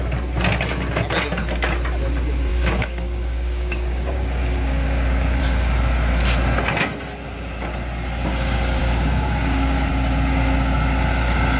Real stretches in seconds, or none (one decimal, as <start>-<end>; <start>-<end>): 0.0-2.5; 5.4-8.8; 9.9-11.6